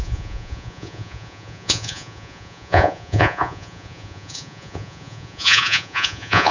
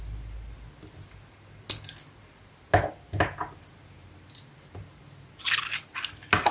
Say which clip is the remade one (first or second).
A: first